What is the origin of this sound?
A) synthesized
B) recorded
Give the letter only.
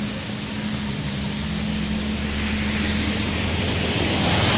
B